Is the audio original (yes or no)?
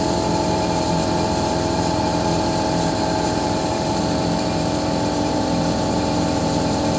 no